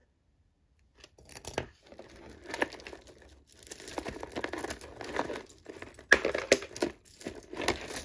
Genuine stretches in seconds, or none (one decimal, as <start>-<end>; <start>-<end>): 0.0-8.0